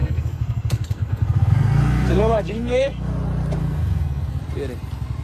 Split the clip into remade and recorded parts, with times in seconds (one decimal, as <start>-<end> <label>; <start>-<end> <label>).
0.0-3.1 remade; 3.1-3.6 recorded; 3.6-4.4 remade; 4.4-5.2 recorded